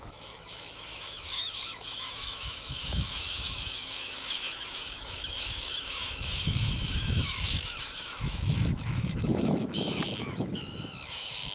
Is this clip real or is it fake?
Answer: fake